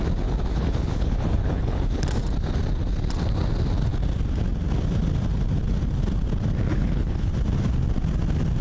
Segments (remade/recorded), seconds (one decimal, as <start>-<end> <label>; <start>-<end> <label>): 0.0-0.5 recorded; 0.5-2.0 remade; 2.0-6.7 recorded; 6.7-7.3 remade; 7.3-8.6 recorded